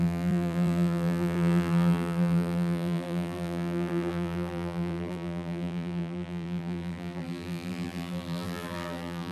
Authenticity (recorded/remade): remade